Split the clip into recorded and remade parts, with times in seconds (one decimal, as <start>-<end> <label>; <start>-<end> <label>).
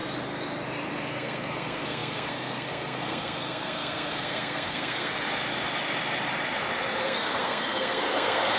0.0-0.9 recorded; 0.9-5.1 remade; 5.1-7.0 recorded; 7.0-8.6 remade